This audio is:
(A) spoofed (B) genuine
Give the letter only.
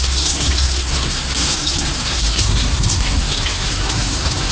A